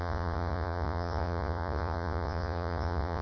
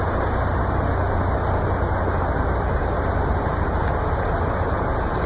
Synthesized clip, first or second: first